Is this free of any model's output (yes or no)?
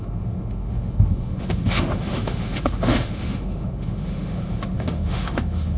no